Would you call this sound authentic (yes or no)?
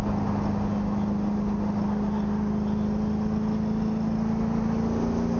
yes